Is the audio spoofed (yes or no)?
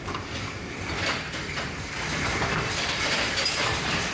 yes